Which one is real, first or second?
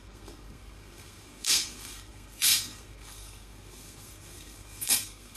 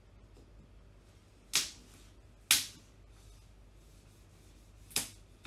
second